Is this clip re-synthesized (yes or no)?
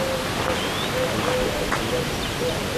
no